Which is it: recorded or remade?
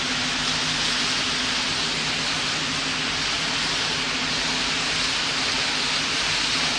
recorded